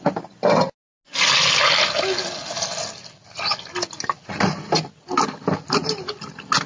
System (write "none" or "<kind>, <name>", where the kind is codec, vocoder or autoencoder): none